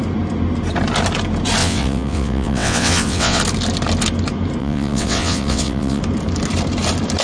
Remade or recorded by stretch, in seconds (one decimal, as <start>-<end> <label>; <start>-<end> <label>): 0.0-1.6 recorded; 1.6-3.4 remade; 3.4-4.6 recorded; 4.6-6.0 remade; 6.0-7.2 recorded